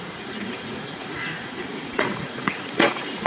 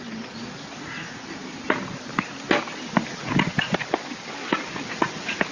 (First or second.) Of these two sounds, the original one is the second